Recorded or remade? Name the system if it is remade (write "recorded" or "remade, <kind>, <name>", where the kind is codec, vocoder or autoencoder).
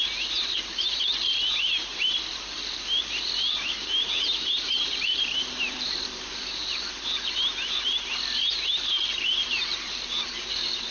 remade, vocoder, BigVGAN v2